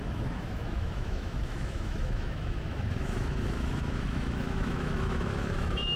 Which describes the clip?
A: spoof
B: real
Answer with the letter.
A